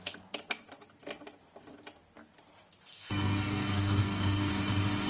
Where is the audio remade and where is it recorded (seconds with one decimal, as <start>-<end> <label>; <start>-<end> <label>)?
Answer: 0.0-2.9 recorded; 2.9-4.5 remade; 4.5-5.1 recorded